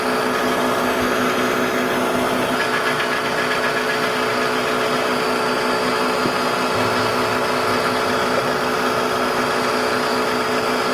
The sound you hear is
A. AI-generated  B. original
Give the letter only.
B